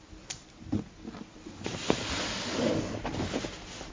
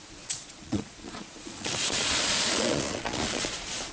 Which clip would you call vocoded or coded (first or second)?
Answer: second